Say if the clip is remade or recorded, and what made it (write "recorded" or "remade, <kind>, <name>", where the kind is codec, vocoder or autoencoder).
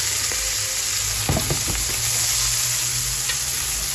recorded